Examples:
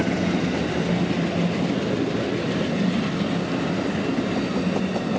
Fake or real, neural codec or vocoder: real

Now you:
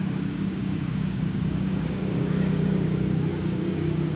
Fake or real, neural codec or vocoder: fake, codec, DAC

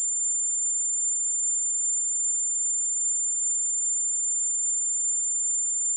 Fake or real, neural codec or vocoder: fake, codec, DAC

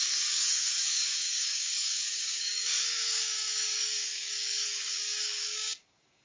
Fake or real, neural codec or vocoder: fake, codec, DAC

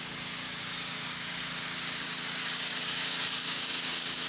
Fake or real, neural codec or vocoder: fake, codec, DAC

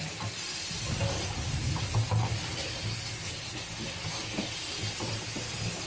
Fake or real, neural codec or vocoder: real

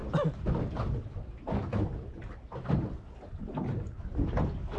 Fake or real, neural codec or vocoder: real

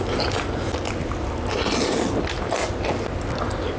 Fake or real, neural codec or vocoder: real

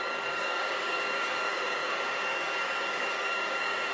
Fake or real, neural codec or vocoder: fake, codec, DAC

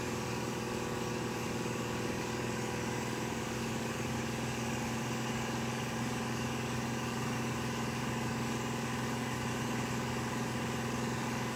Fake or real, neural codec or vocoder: fake, codec, DAC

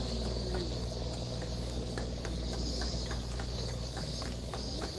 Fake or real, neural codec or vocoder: fake, codec, DAC